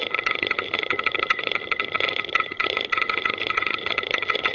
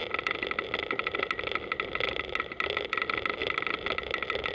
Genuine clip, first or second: second